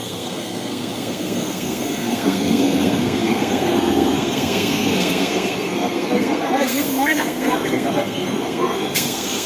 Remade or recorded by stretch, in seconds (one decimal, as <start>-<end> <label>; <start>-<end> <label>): 0.0-9.5 remade